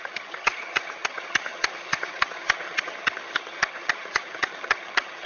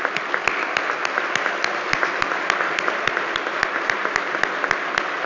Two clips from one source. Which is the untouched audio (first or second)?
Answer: second